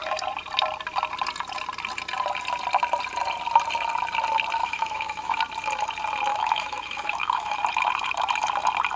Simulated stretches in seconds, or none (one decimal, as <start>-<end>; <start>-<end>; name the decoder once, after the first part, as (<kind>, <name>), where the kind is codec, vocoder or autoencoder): 4.6-5.4 (autoencoder, DAC-VAE); 6.3-7.6